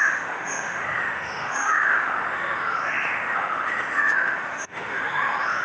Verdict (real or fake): fake